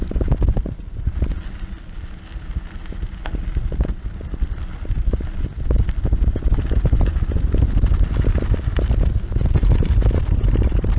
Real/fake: real